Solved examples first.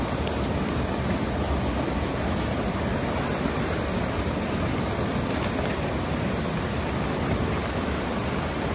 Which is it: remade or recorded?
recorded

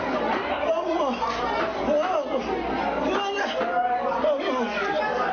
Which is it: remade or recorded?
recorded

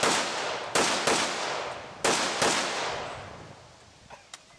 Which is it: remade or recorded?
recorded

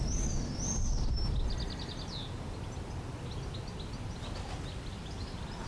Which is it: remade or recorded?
recorded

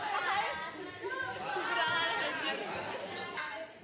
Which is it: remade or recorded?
recorded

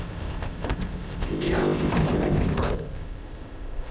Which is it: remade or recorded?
remade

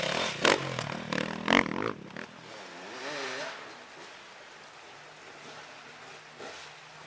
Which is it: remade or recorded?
recorded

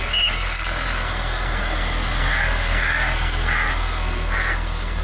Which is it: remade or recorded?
remade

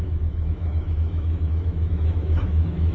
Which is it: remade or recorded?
remade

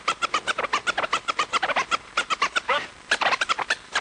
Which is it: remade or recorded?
remade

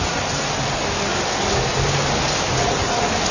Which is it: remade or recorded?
recorded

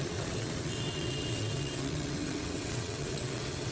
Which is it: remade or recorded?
remade